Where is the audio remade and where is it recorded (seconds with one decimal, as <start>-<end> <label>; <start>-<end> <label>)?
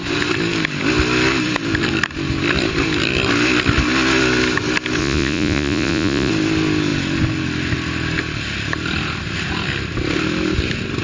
0.0-5.0 recorded; 5.0-6.3 remade; 6.3-11.0 recorded